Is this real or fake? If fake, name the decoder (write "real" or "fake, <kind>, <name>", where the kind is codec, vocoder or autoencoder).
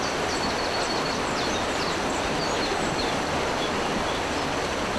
fake, vocoder, BigVGAN v2